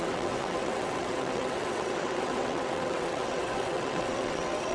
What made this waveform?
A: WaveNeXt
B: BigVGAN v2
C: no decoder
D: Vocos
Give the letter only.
A